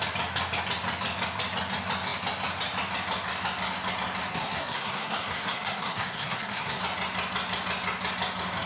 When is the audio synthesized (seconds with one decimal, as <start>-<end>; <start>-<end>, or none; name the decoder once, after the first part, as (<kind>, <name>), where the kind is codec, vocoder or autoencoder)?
4.3-6.8 (codec, SNAC)